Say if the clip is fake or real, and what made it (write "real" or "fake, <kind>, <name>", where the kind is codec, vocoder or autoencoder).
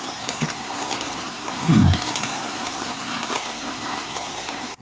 fake, codec, SNAC